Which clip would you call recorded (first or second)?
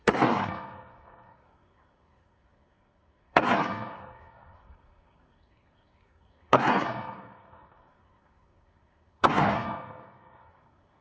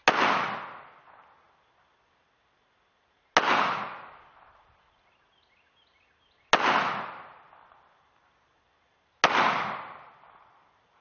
second